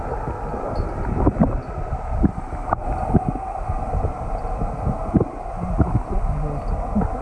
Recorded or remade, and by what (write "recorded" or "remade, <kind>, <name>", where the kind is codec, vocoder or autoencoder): recorded